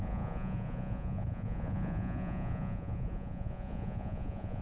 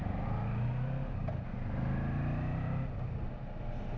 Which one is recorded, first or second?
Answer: second